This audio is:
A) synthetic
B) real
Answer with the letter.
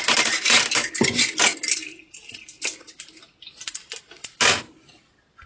B